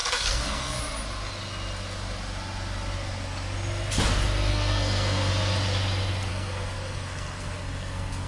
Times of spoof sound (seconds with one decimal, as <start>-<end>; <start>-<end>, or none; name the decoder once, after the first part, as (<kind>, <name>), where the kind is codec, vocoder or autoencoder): 0.0-0.8 (codec, SNAC); 4.5-5.3; 6.3-8.3